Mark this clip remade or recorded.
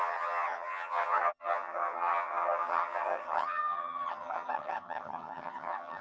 remade